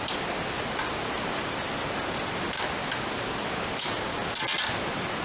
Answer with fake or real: real